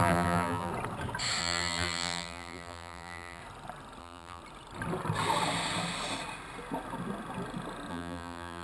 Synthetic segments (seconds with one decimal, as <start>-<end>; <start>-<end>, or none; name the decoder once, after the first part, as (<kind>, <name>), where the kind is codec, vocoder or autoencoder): 0.0-0.7 (vocoder, BigVGAN v2); 1.4-3.4; 4.0-4.4; 7.9-8.6